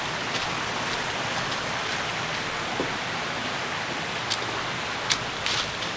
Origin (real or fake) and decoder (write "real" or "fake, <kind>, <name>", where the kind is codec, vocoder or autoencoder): real